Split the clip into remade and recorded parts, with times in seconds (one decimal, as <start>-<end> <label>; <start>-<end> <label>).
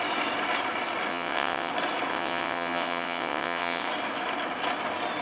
0.0-1.1 recorded; 1.1-1.7 remade; 1.7-2.1 recorded; 2.1-3.9 remade; 3.9-5.2 recorded